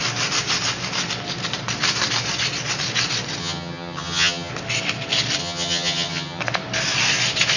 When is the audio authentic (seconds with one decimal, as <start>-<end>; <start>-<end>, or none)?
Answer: 0.0-3.4; 4.5-5.4; 6.4-7.6